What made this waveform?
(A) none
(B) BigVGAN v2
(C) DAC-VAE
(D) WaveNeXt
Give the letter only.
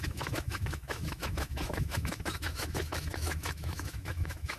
C